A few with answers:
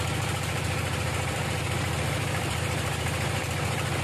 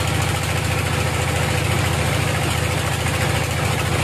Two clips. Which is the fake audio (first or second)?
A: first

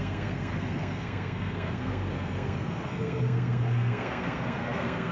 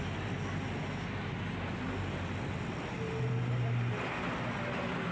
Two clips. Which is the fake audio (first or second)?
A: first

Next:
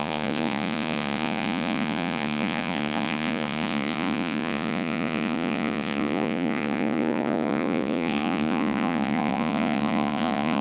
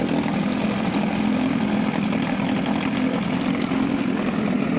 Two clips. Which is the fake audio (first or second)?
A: first